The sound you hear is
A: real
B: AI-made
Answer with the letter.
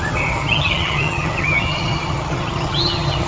B